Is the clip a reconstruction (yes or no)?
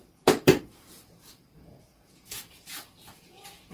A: yes